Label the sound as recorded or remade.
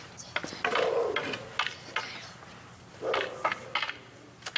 recorded